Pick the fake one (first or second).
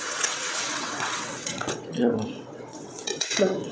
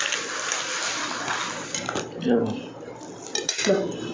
first